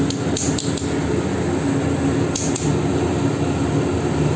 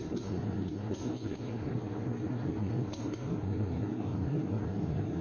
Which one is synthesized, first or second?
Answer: second